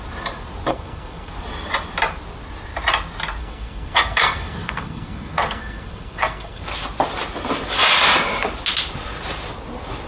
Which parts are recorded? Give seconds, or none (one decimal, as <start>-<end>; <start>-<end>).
0.0-0.7; 1.3-3.4; 6.6-10.1